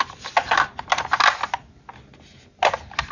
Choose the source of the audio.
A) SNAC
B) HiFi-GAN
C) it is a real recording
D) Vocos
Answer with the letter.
C